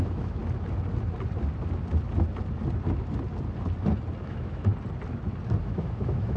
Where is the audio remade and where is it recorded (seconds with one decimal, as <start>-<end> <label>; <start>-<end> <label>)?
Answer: 0.0-0.4 remade; 0.4-4.2 recorded; 4.2-4.7 remade; 4.7-5.6 recorded; 5.6-6.4 remade